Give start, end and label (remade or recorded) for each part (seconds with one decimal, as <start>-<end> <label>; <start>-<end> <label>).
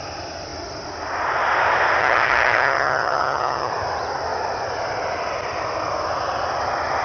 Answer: 0.0-2.0 recorded; 2.0-3.7 remade; 3.7-7.0 recorded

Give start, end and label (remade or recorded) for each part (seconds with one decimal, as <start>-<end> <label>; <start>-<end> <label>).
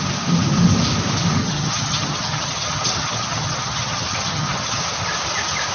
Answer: 0.0-1.4 recorded; 1.4-4.8 remade; 4.8-5.7 recorded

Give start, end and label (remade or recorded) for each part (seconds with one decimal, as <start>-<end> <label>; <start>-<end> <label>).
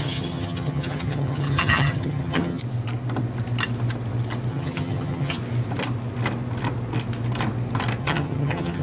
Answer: 0.0-2.6 remade; 2.6-4.5 recorded; 4.5-5.4 remade; 5.4-8.0 recorded; 8.0-8.8 remade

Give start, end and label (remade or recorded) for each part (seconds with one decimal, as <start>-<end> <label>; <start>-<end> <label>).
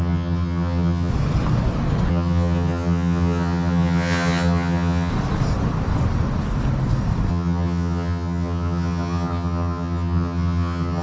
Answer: 0.0-1.1 remade; 1.1-2.1 recorded; 2.1-5.1 remade; 5.1-7.3 recorded; 7.3-11.0 remade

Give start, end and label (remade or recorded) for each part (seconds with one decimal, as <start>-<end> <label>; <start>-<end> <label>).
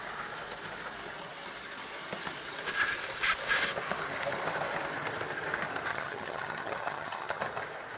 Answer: 0.0-5.9 recorded; 5.9-7.4 remade; 7.4-8.0 recorded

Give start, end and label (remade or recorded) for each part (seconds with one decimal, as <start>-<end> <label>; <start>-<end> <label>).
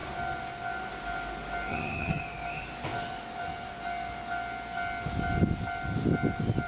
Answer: 0.0-1.7 recorded; 1.7-2.2 remade; 2.2-6.7 recorded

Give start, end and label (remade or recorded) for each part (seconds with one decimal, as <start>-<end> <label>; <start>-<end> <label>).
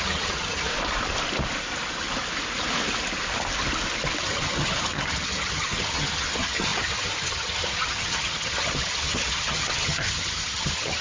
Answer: 0.0-0.7 remade; 0.7-4.2 recorded; 4.2-11.0 remade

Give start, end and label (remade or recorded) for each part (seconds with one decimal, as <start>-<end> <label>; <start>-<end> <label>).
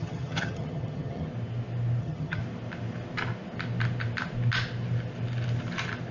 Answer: 0.0-1.3 remade; 1.3-2.0 recorded; 2.0-2.4 remade; 2.4-6.1 recorded